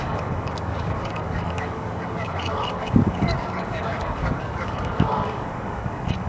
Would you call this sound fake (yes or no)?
yes